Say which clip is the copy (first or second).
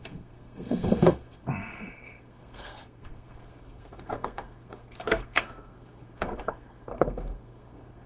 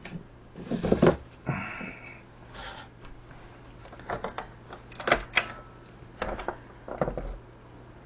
first